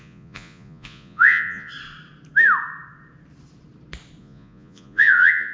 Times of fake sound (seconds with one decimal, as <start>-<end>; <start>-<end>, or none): 0.0-1.7; 4.2-5.5